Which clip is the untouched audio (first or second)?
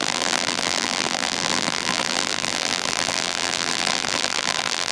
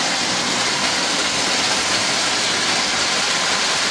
second